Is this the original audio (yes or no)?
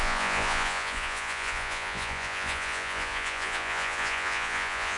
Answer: no